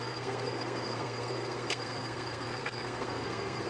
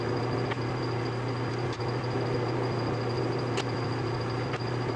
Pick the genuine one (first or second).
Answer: second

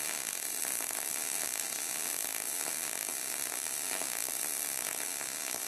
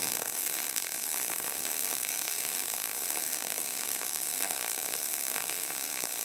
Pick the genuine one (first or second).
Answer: first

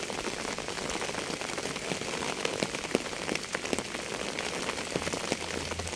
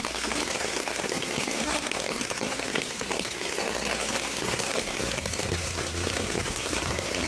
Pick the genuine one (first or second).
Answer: first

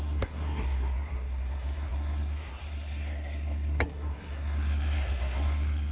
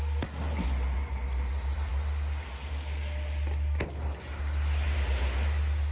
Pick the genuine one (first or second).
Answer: second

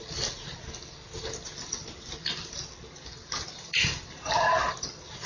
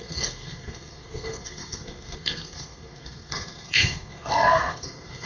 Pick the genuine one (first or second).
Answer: first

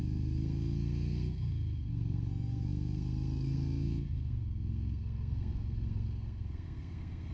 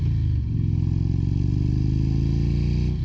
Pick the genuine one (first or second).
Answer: second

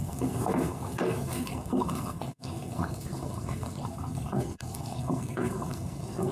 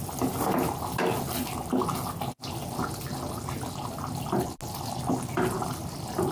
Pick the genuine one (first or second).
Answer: second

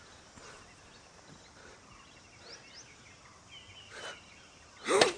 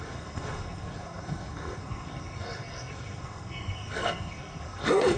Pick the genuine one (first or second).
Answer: first